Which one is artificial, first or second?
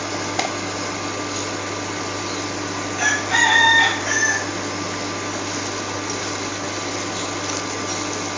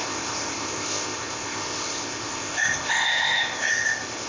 second